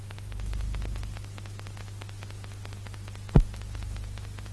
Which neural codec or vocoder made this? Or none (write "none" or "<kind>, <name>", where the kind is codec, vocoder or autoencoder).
none